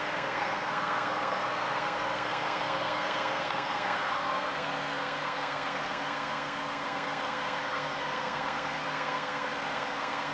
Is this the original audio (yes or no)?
no